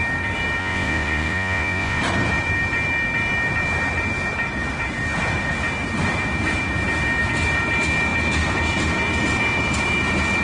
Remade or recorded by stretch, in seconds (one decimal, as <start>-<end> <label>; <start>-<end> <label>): 0.0-0.6 recorded; 0.6-2.0 remade; 2.0-10.4 recorded